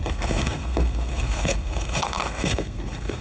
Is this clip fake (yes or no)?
yes